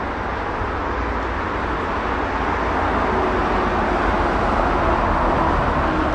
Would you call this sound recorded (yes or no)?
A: yes